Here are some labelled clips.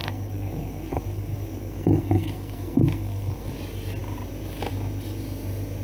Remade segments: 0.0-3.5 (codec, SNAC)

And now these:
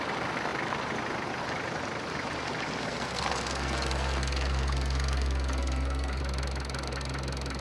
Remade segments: 2.8-6.2 (codec, SNAC)

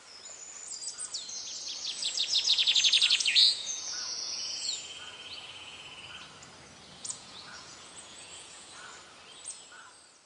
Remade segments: 2.0-6.1 (vocoder, Vocos); 7.0-8.7

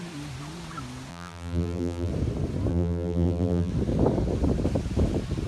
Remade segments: 1.1-2.1 (vocoder, BigVGAN v2); 2.7-3.7

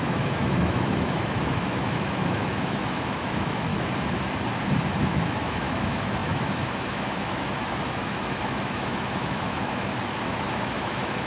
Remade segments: 0.0-3.7 (autoencoder, DAC-VAE); 5.1-11.3

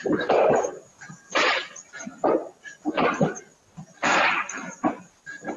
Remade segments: none

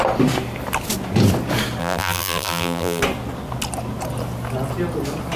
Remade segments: 1.8-3.0 (vocoder, BigVGAN v2)

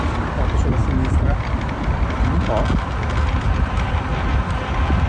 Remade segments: none